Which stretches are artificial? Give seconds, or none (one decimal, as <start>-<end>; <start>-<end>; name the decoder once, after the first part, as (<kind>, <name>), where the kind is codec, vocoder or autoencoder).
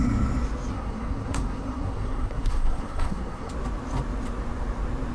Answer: 0.7-3.5 (codec, SNAC)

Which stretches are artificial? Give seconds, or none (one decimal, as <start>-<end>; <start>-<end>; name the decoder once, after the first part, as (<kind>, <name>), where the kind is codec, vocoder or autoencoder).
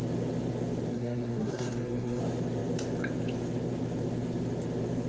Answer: 0.9-2.2 (codec, SNAC)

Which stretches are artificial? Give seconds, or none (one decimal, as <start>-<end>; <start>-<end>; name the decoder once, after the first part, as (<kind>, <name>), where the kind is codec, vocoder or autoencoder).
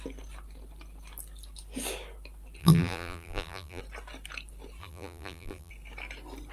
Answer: 2.6-3.8 (vocoder, BigVGAN v2); 4.8-5.7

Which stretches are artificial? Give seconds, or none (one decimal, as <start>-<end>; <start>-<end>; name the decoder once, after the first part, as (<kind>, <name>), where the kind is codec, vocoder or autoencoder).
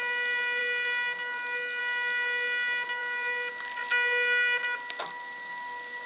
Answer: none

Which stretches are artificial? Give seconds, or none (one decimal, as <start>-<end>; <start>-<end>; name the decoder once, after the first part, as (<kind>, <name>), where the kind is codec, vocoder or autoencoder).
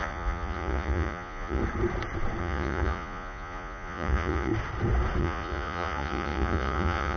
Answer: 0.0-1.6 (vocoder, Vocos); 2.4-4.5; 5.2-7.2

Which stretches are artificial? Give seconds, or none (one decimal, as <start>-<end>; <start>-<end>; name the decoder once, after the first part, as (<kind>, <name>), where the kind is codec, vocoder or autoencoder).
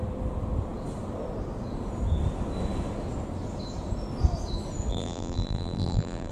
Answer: 4.9-6.3 (vocoder, BigVGAN v2)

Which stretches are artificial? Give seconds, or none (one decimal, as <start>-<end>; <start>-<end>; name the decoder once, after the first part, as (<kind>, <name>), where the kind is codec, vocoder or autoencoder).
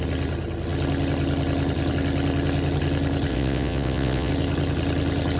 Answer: 3.3-4.3 (vocoder, WaveNeXt)